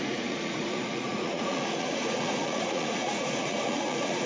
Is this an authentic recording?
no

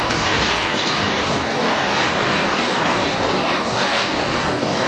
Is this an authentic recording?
no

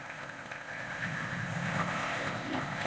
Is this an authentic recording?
no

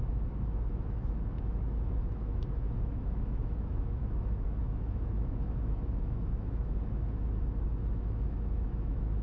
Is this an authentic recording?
no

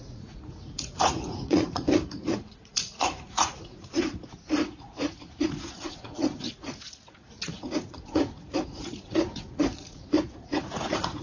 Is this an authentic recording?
no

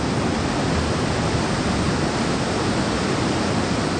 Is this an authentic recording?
yes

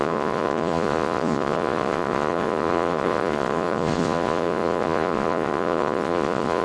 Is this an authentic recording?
no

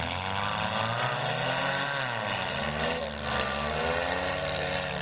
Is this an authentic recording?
yes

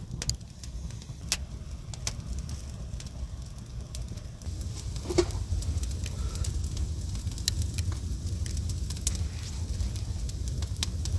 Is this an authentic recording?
yes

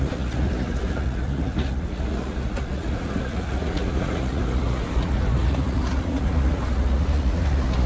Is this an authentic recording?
no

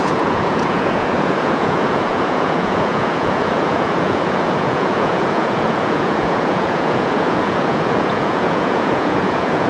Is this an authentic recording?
no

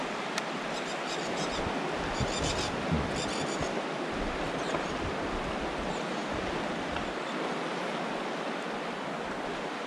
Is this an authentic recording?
yes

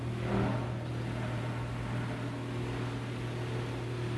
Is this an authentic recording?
yes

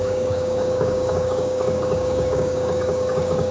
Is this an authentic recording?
no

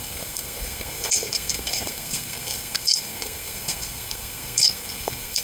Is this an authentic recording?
no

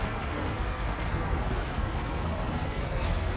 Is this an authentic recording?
no